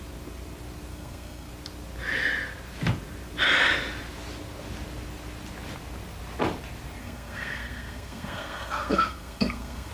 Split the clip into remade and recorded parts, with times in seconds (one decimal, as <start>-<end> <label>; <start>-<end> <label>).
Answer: 0.0-0.9 recorded; 0.9-1.5 remade; 1.5-7.0 recorded; 7.0-9.9 remade